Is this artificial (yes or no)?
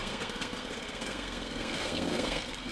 yes